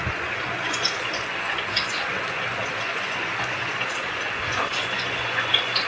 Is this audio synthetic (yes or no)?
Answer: yes